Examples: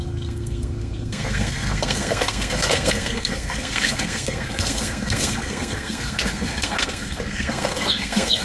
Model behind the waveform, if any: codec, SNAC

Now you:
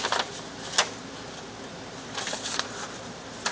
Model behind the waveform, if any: none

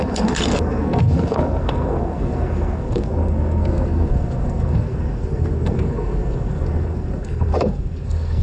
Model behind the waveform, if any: codec, SNAC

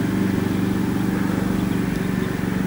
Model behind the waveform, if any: none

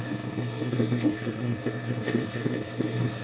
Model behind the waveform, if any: codec, SNAC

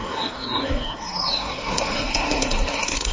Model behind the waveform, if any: codec, SNAC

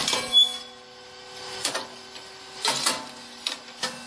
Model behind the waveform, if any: none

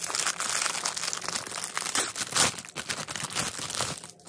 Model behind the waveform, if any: none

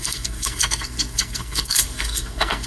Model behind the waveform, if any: codec, SNAC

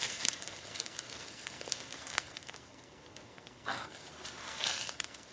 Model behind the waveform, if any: codec, SNAC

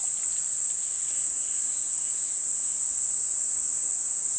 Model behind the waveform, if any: none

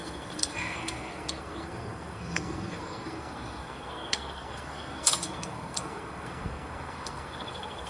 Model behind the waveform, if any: codec, SNAC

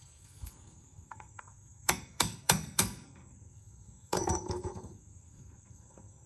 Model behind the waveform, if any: codec, SNAC